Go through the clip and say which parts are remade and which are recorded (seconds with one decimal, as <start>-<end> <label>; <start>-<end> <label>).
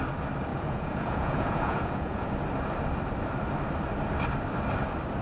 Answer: 0.0-0.5 recorded; 0.5-2.3 remade; 2.3-5.2 recorded